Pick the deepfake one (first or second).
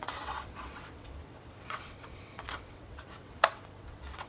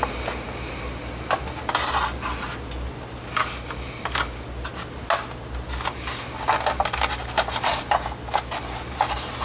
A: first